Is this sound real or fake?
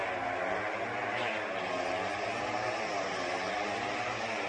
real